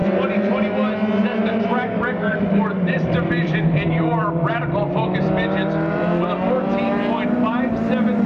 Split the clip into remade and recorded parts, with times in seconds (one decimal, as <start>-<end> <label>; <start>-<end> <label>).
0.0-0.5 remade; 0.5-2.3 recorded; 2.3-6.2 remade; 6.2-8.3 recorded